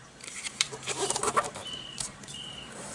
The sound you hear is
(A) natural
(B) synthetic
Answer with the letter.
B